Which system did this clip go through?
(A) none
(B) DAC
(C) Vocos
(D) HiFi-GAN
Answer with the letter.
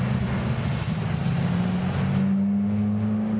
A